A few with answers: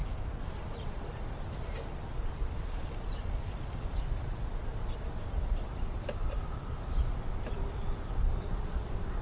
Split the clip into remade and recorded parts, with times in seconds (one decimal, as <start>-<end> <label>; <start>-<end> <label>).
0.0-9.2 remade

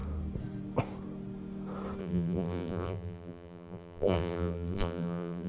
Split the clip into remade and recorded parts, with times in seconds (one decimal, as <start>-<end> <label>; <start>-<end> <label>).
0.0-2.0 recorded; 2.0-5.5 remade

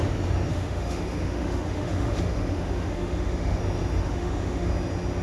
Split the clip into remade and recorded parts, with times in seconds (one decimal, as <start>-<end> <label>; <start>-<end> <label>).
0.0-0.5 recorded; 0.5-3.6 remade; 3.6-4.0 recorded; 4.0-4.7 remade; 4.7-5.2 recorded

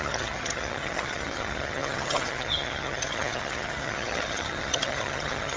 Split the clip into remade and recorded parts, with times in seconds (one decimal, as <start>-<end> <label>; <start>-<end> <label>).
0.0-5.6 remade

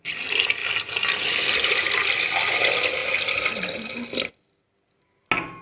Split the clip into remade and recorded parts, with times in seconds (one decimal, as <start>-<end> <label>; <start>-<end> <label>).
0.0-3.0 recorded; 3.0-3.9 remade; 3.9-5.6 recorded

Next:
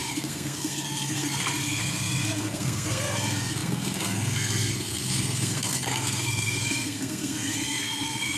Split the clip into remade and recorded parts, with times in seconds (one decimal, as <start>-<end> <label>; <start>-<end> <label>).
0.0-8.4 remade

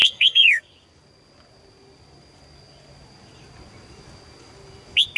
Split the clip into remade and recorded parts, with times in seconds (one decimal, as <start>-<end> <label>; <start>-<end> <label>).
0.0-0.6 remade; 0.6-5.2 recorded